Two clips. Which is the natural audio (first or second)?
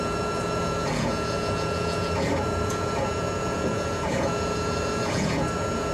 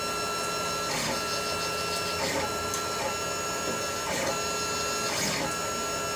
second